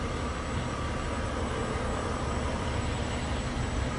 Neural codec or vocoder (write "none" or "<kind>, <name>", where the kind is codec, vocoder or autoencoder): none